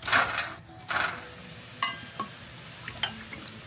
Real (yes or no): yes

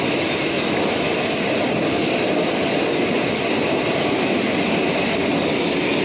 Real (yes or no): yes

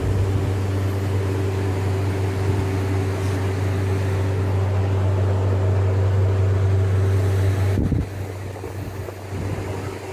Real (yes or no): yes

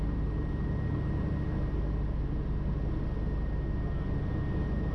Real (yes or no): yes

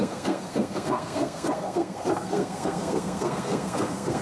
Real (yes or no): no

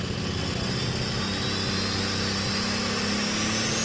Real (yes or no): yes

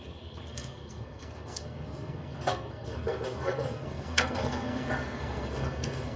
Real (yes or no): no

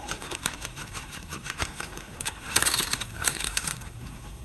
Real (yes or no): no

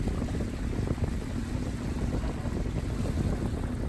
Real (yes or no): yes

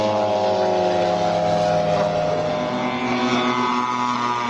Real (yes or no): yes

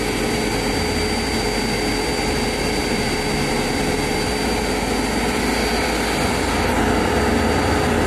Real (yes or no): yes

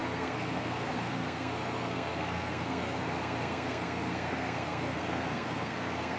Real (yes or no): no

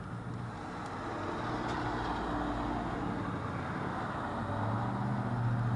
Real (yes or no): yes